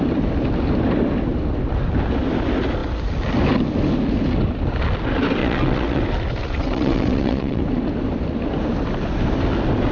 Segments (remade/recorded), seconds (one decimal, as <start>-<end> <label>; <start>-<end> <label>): 0.0-5.4 recorded; 5.4-6.0 remade; 6.0-6.4 recorded; 6.4-7.6 remade; 7.6-9.9 recorded